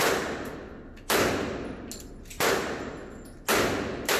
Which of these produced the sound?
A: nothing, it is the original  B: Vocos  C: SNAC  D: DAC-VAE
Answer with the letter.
A